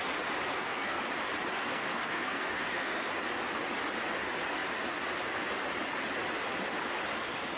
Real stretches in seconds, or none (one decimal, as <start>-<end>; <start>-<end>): 0.0-0.5; 1.0-1.6; 3.1-7.6